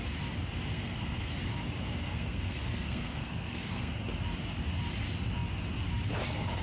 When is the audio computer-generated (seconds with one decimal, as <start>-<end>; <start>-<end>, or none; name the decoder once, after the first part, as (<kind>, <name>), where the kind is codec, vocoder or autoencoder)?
0.7-1.3 (codec, SNAC); 2.0-3.9